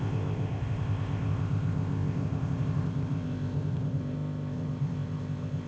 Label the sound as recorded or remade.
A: remade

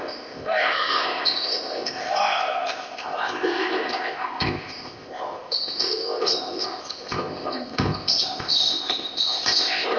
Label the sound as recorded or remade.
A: remade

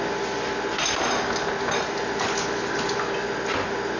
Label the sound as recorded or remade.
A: recorded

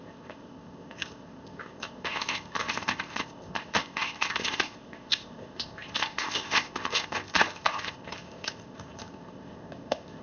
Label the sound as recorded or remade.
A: remade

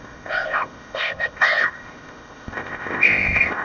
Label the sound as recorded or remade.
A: remade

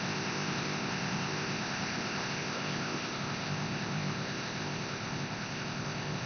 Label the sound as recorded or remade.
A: remade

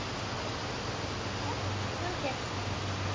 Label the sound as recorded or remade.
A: recorded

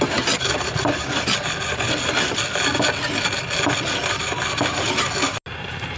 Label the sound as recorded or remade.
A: recorded